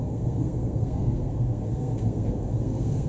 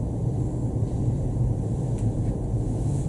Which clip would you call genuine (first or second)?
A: second